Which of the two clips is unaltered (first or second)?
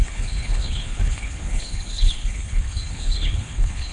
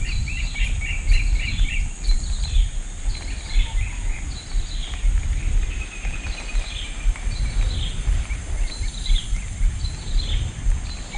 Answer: second